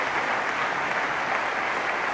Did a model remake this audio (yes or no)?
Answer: no